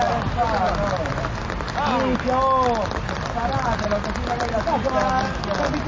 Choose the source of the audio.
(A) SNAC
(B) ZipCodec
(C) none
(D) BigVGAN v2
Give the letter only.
C